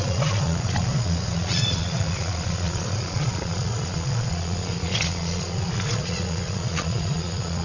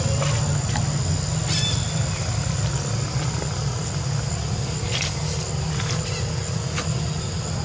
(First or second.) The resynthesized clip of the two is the first